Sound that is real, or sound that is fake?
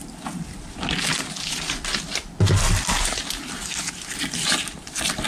real